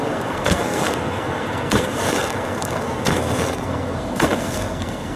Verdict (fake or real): fake